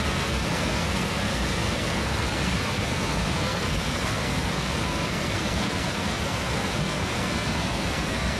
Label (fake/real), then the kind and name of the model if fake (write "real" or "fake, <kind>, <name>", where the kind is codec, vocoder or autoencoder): fake, codec, SNAC